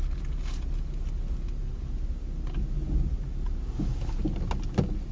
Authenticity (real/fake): real